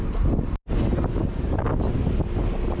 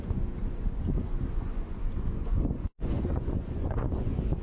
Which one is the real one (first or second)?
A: first